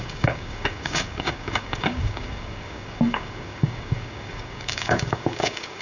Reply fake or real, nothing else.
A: fake